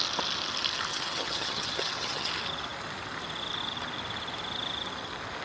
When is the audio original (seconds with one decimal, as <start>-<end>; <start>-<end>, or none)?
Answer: 0.0-0.9; 2.3-5.4